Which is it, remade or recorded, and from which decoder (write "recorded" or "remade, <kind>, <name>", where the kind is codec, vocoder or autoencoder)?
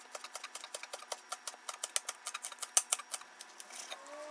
recorded